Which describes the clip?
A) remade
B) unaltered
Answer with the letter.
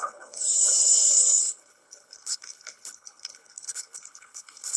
A